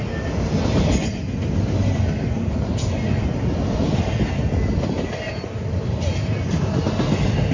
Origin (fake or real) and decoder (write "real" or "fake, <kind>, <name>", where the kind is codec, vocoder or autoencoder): real